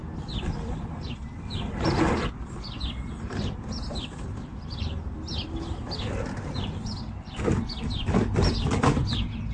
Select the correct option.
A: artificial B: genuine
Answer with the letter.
B